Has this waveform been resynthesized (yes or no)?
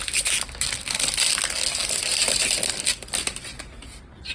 no